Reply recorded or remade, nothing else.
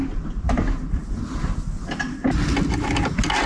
recorded